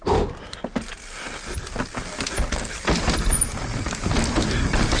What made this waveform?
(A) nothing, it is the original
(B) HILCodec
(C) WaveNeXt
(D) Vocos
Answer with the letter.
A